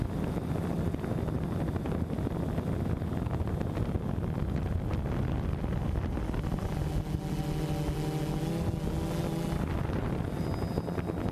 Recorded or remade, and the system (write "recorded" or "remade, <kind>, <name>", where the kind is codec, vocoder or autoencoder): recorded